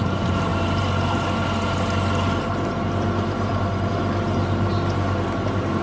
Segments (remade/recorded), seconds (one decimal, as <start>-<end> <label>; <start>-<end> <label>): 0.0-5.8 recorded